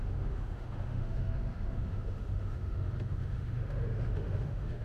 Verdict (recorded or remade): remade